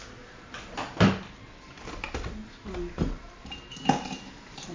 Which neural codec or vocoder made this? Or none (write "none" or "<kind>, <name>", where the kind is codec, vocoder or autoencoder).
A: none